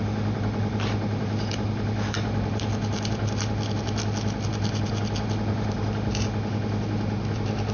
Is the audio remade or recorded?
recorded